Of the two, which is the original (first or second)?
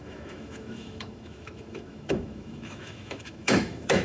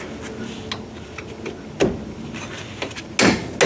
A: second